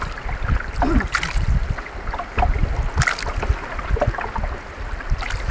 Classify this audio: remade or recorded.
recorded